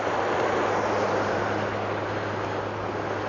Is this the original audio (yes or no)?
yes